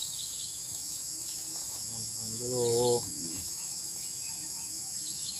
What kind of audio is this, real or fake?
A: fake